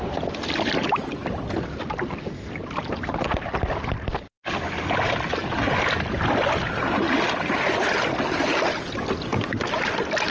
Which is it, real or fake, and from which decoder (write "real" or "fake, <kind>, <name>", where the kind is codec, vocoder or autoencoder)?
real